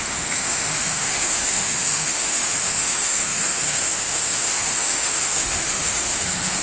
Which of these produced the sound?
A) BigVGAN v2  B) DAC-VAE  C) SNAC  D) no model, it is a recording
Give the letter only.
B